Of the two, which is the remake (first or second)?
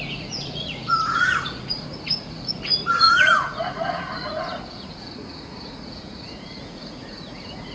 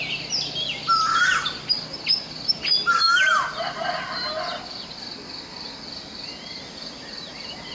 first